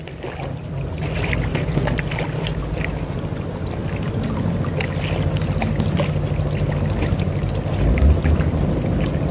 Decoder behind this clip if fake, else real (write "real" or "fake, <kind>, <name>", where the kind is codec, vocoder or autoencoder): real